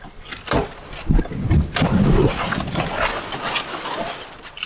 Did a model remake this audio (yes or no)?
no